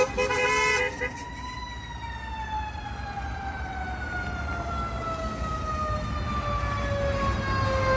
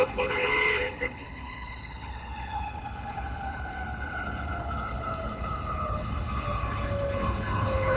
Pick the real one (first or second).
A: first